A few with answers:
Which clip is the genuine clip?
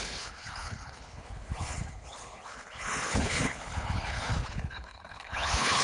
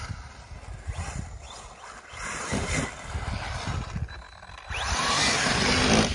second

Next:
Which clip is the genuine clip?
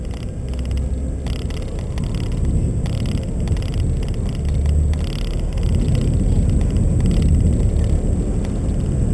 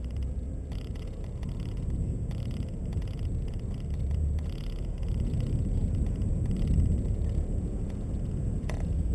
first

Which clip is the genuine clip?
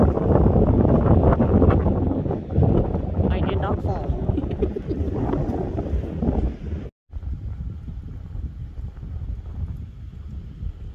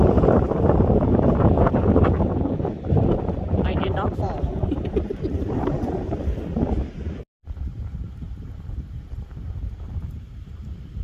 first